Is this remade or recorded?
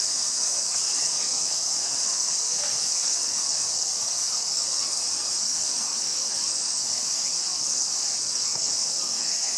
remade